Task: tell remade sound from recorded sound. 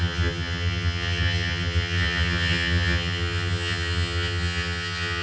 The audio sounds remade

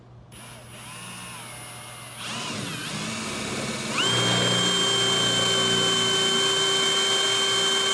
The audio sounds recorded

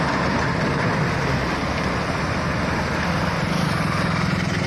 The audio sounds recorded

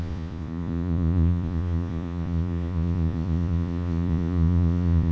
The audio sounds remade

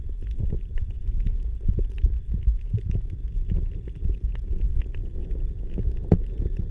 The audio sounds recorded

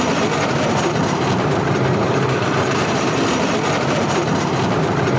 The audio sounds remade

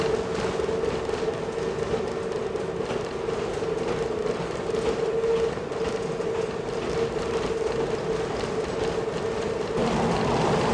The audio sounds recorded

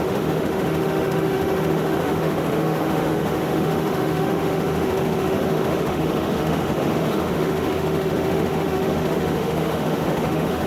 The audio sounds remade